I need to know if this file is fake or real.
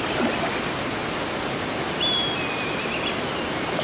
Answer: real